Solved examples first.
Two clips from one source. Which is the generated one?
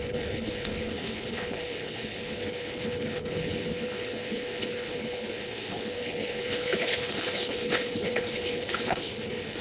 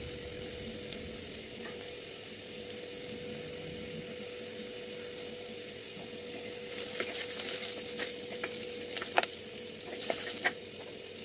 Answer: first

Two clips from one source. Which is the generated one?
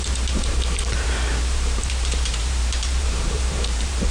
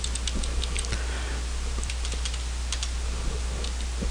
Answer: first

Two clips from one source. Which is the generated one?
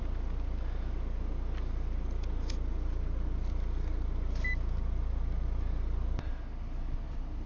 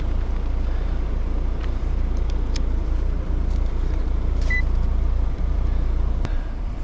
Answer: second